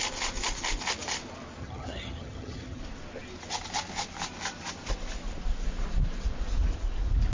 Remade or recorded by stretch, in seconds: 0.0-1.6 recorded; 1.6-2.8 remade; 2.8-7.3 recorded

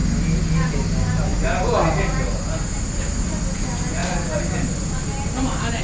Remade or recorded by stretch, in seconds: 0.0-5.8 recorded

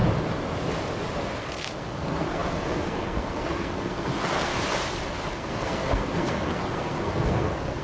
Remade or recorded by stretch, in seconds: 0.0-1.4 recorded; 1.4-4.5 remade; 4.5-5.3 recorded; 5.3-7.8 remade

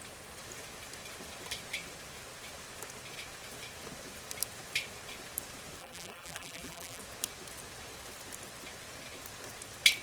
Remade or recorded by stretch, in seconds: 0.0-5.8 recorded; 5.8-7.0 remade; 7.0-10.0 recorded

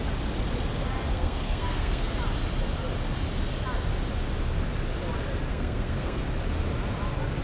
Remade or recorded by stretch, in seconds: 0.0-1.1 recorded; 1.1-2.1 remade; 2.1-5.5 recorded; 5.5-6.2 remade; 6.2-7.4 recorded